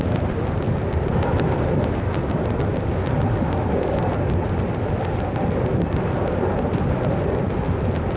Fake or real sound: real